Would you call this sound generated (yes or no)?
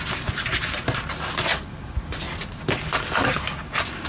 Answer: no